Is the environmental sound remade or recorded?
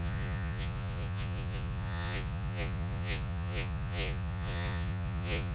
remade